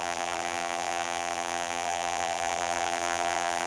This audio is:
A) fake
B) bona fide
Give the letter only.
A